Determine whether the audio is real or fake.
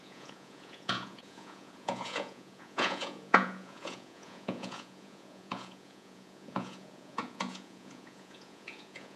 fake